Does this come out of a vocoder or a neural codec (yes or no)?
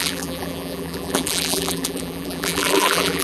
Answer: yes